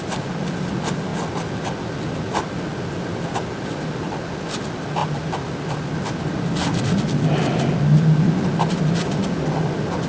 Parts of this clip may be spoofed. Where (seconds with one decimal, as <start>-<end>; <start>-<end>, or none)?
none